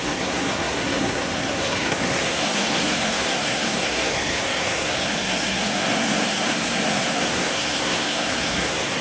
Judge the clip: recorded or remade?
remade